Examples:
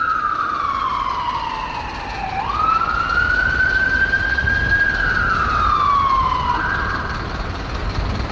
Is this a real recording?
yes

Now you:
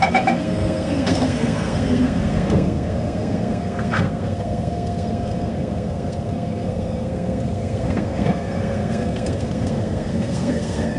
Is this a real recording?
no